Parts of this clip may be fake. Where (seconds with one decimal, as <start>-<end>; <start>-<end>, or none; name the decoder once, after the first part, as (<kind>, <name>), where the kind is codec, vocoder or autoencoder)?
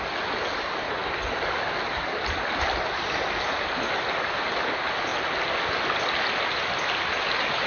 none